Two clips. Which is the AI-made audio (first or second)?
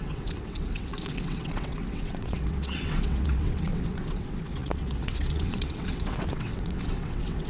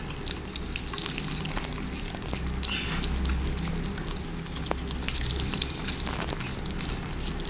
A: first